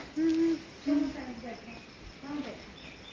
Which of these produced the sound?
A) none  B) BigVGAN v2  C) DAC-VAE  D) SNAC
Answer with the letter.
A